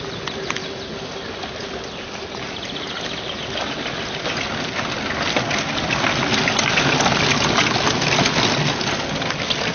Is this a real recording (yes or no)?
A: yes